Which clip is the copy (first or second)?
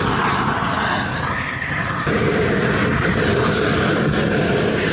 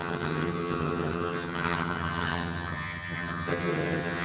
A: second